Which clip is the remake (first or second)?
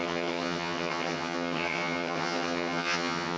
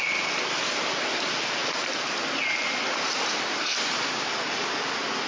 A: first